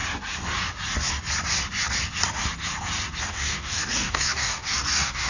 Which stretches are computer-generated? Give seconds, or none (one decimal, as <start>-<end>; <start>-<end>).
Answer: 3.2-5.3